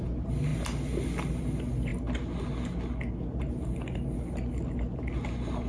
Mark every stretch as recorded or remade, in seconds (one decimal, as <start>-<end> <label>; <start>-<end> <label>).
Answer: 0.0-5.7 recorded